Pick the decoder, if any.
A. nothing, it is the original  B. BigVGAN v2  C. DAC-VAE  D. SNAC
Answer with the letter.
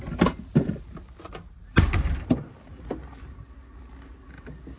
A